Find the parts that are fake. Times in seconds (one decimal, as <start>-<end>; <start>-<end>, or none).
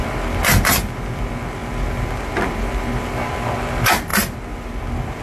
none